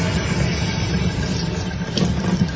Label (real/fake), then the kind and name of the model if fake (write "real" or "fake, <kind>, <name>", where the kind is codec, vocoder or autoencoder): real